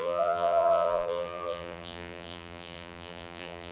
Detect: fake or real fake